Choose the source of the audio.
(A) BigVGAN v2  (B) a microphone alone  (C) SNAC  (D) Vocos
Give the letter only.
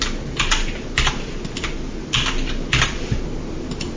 B